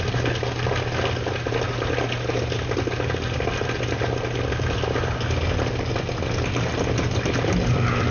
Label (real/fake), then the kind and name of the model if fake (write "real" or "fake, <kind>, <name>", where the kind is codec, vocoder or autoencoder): real